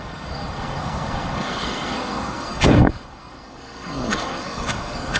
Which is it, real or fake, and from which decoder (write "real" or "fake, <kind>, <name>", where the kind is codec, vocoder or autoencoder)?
fake, codec, SNAC